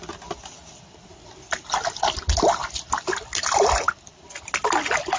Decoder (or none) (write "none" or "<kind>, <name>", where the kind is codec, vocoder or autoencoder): none